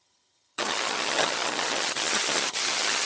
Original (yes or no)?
no